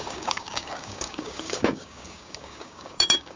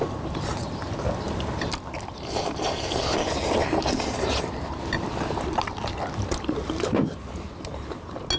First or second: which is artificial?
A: first